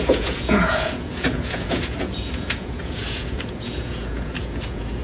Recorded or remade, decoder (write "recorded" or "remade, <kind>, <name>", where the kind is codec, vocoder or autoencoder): remade, vocoder, Vocos